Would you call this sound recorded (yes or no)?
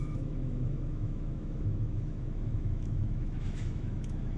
no